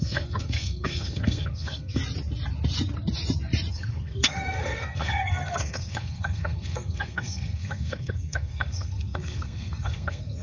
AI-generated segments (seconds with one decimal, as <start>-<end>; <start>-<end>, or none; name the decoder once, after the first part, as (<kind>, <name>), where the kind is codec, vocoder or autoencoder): 0.0-2.0 (codec, SNAC); 3.7-10.4